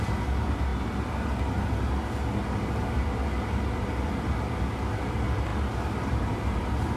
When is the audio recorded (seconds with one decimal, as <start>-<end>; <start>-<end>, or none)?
0.0-5.5; 6.6-7.0